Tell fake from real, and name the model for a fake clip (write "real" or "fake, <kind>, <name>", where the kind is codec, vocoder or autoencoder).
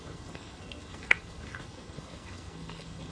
fake, codec, SNAC